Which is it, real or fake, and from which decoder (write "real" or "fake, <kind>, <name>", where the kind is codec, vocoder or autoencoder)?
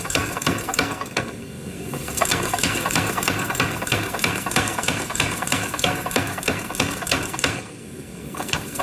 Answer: fake, codec, SNAC